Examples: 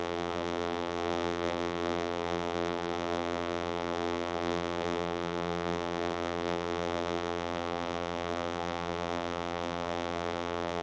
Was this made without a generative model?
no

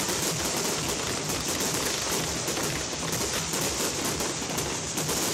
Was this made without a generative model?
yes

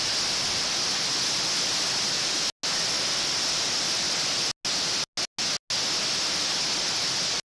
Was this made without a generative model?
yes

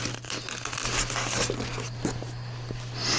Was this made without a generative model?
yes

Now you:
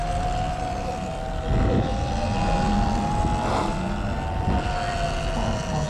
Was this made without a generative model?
yes